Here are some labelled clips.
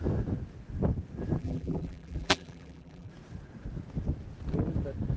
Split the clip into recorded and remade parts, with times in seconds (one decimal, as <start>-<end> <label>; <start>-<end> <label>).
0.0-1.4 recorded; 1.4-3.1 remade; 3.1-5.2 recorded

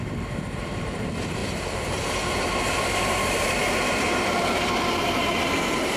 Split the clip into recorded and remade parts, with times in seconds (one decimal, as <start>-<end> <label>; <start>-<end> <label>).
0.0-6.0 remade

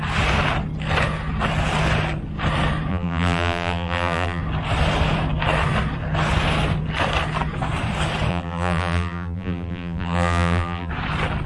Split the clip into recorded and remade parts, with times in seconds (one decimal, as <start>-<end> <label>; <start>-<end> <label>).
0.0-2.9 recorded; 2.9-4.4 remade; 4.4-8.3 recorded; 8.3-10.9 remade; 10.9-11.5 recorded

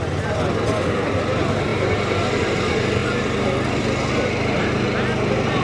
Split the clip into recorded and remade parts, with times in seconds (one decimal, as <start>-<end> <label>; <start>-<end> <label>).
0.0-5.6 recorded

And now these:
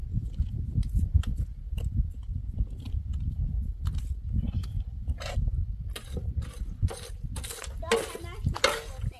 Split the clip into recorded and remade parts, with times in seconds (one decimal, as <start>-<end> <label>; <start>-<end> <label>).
0.0-9.2 recorded

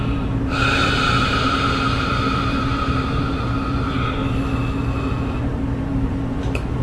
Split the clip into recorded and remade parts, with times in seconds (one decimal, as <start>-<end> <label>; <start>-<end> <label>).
0.0-4.2 remade; 4.2-5.1 recorded; 5.1-6.8 remade